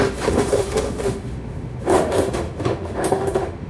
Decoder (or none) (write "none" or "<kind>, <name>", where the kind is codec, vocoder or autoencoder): autoencoder, DAC-VAE